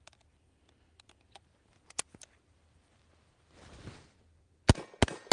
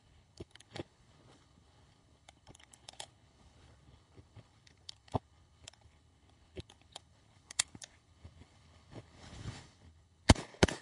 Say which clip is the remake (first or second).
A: second